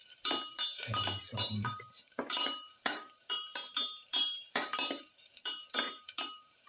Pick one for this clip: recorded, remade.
remade